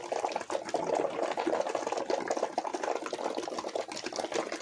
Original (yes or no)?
yes